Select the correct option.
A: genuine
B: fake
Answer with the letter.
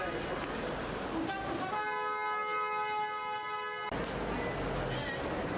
A